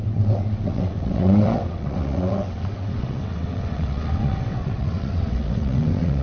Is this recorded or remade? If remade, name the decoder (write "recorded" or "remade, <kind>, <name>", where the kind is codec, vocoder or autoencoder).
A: remade, vocoder, WaveNeXt